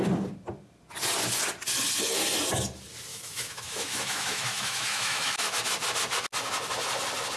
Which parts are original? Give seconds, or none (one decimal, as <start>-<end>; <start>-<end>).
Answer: 0.0-3.1; 5.6-7.4